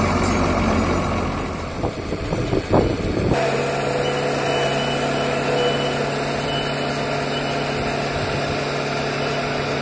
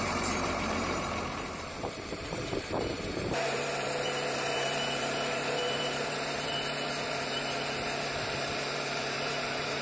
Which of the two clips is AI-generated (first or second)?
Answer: second